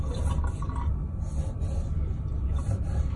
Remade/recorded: recorded